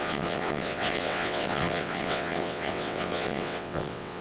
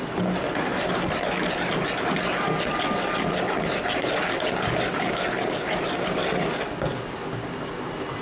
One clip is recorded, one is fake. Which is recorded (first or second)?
second